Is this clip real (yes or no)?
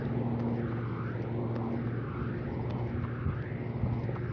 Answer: yes